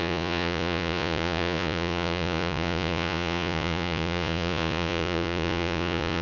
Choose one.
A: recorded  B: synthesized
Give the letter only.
B